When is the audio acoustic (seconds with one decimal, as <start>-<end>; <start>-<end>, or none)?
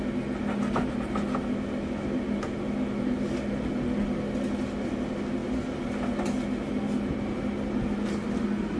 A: 0.0-8.8